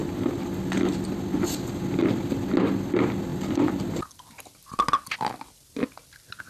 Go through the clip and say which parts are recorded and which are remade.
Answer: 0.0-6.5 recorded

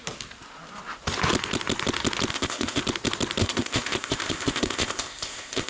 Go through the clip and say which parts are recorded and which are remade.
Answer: 0.0-2.3 recorded; 2.3-2.8 remade; 2.8-3.4 recorded; 3.4-5.7 remade

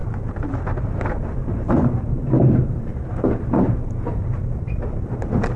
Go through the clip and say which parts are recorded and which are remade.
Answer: 0.0-5.6 remade